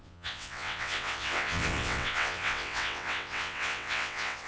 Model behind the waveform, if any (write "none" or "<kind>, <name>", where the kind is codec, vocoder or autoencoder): vocoder, WaveNeXt